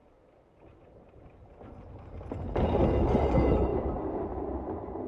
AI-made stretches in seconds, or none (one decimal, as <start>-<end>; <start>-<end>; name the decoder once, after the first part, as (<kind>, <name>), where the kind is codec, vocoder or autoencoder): none